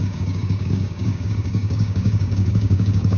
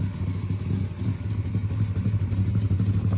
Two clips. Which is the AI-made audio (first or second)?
first